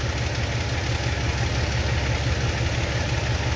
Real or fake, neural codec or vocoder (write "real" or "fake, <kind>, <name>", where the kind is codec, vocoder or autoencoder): real